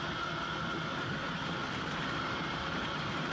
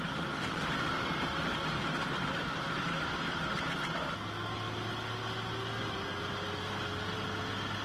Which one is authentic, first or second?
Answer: second